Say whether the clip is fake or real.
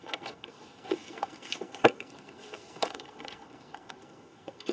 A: fake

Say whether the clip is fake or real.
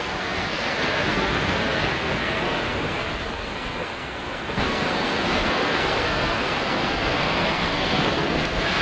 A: fake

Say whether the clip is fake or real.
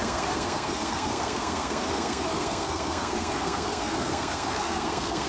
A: fake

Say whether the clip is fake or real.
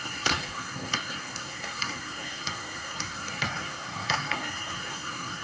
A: fake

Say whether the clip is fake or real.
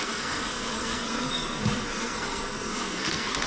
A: fake